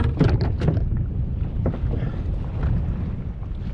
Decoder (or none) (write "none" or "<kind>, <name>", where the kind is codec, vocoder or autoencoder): none